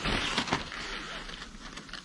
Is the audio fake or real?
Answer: real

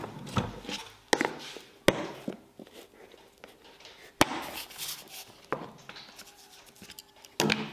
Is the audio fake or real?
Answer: real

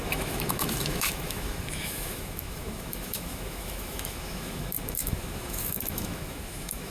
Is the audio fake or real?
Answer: fake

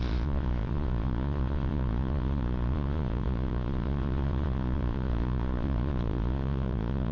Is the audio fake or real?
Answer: fake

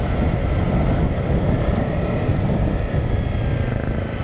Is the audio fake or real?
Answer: real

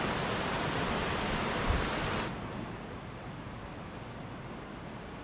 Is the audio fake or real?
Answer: real